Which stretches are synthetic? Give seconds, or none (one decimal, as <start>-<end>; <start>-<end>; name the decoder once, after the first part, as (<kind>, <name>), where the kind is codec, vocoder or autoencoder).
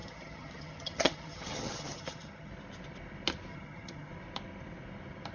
0.0-2.5 (vocoder, HiFi-GAN); 3.5-4.1